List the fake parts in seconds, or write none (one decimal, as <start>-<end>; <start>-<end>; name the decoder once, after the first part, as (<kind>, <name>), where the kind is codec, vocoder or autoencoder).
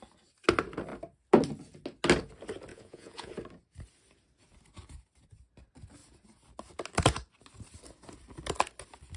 2.7-3.3 (vocoder, Vocos)